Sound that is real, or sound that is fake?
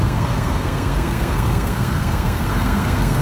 fake